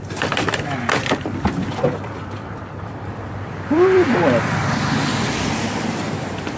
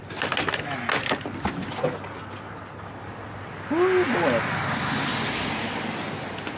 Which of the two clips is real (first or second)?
second